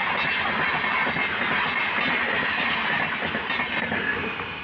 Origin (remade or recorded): recorded